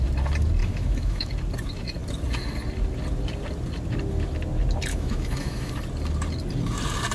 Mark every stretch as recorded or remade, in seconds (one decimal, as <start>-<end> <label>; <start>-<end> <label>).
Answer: 0.0-0.6 recorded; 0.6-1.3 remade; 1.3-4.9 recorded; 4.9-5.7 remade; 5.7-7.1 recorded